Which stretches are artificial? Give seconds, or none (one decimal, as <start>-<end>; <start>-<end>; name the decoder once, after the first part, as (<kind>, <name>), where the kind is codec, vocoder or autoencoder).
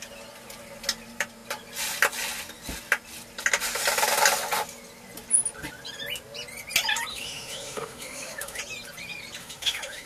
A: 7.1-8.6 (autoencoder, DAC-VAE); 9.4-10.1